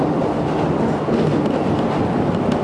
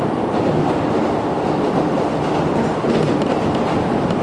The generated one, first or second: second